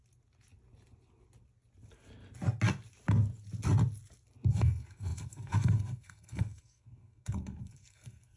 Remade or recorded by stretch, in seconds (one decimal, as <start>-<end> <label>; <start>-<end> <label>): 0.0-4.5 recorded; 4.5-8.4 remade